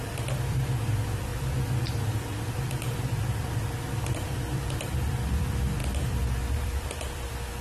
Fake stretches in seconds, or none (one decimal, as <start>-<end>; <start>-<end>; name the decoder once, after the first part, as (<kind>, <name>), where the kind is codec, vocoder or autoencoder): 0.0-5.8 (vocoder, BigVGAN v2); 6.6-7.6